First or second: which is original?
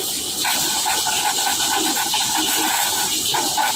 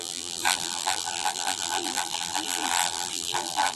first